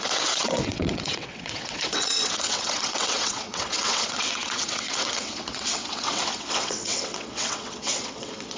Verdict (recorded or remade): remade